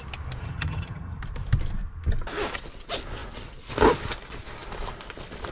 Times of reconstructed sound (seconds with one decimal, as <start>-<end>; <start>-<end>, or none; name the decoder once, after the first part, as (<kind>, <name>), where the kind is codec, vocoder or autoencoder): 0.4-1.2 (vocoder, HiFi-GAN)